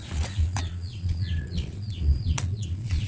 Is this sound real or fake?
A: fake